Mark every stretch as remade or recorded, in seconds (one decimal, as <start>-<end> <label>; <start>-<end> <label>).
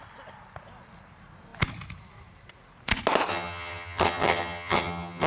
0.0-3.3 recorded; 3.3-5.3 remade